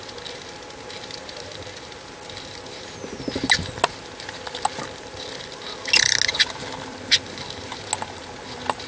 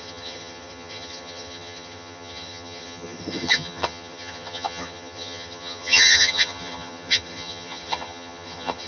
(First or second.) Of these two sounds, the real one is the first